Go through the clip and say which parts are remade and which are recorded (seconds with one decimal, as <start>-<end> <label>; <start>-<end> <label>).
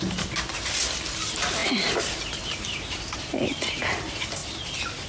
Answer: 0.0-5.1 recorded